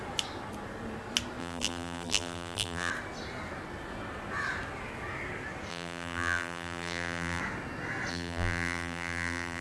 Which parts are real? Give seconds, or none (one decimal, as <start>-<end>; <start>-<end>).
0.0-1.4; 2.9-5.7; 7.4-8.1